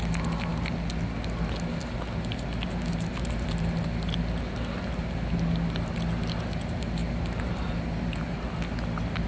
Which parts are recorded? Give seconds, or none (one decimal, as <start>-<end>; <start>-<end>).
0.0-9.3